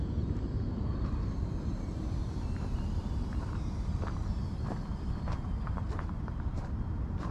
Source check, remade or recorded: remade